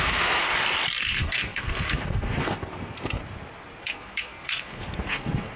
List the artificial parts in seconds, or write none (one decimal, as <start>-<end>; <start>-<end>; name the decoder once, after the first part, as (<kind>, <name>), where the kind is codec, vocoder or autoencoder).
0.0-0.4 (codec, SNAC); 1.0-3.2; 3.8-5.6